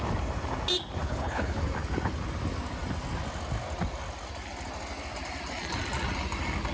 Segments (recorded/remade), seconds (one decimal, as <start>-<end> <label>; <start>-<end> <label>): 0.0-1.0 recorded; 1.0-1.6 remade; 1.6-6.7 recorded